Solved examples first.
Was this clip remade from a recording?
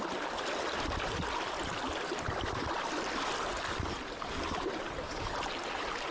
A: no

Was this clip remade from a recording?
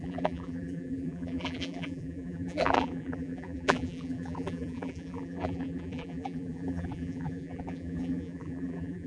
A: yes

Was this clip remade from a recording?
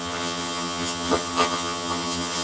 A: yes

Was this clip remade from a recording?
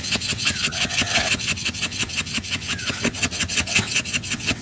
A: yes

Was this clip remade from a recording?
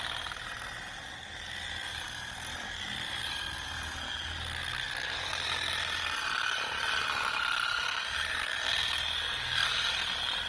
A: no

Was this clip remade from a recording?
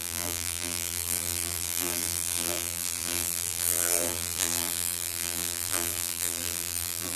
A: yes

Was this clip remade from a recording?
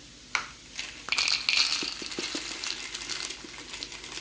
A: no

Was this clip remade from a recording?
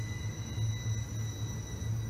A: no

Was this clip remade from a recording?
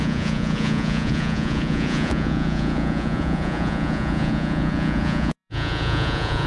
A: yes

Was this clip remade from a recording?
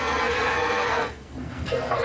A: yes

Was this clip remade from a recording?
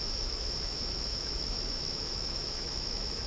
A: yes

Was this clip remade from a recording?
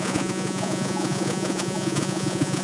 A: yes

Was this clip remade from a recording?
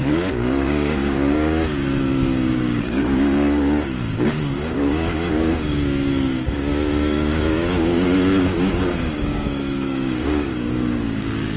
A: yes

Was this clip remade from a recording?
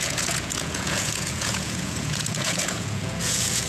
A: yes